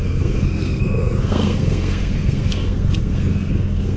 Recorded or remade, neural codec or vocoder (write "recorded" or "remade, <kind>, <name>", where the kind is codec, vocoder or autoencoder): remade, codec, SNAC